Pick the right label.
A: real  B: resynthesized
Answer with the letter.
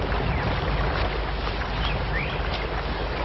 A